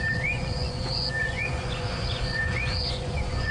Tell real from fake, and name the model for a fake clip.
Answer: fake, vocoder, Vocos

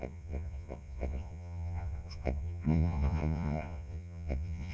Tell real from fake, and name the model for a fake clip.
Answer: fake, vocoder, Vocos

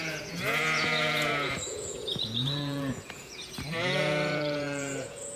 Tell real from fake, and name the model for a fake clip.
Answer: fake, vocoder, Vocos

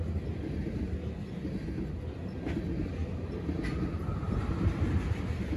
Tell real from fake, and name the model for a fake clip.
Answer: real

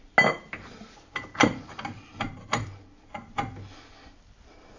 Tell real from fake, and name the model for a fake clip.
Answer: real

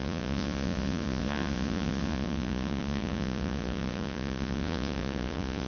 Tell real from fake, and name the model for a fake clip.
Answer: fake, vocoder, Vocos